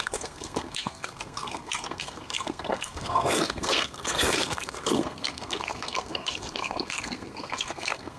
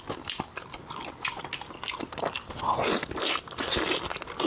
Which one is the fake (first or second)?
first